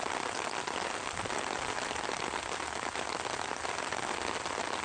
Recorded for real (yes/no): yes